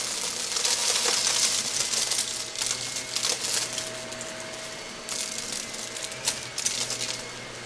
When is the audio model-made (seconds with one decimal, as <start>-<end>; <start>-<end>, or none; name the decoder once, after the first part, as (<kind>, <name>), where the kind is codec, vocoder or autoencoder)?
none